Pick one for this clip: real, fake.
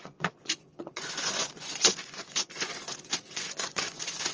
fake